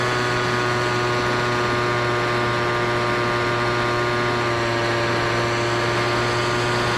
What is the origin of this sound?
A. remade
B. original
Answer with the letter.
B